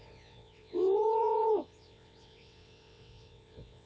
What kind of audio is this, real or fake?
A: fake